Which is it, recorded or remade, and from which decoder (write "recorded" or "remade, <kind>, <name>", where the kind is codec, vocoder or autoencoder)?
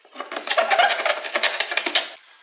recorded